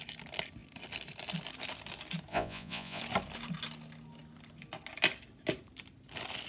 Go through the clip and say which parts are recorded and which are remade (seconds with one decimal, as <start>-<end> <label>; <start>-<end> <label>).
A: 0.0-2.3 recorded; 2.3-3.0 remade; 3.0-6.5 recorded

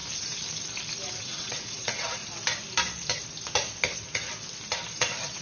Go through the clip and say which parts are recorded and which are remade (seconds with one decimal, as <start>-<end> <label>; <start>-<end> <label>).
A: 0.0-1.2 recorded; 1.2-2.2 remade; 2.2-5.0 recorded; 5.0-5.4 remade

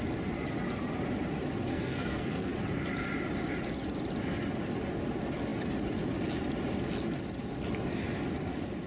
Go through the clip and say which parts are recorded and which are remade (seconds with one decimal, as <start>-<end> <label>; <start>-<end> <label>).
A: 0.0-1.7 recorded; 1.7-2.5 remade; 2.5-8.9 recorded

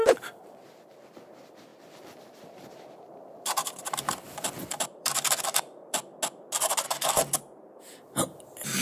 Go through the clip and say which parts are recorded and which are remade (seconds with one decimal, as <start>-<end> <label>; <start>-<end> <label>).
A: 0.0-6.0 remade; 6.0-7.8 recorded; 7.8-8.8 remade